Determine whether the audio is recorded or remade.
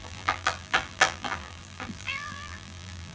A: remade